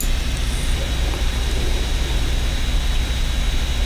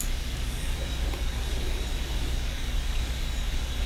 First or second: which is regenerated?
second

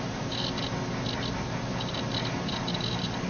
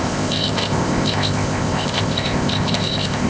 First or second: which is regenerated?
second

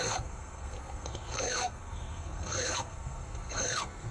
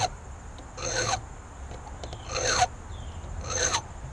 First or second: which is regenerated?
first